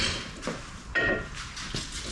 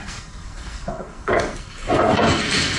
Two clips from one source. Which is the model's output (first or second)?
second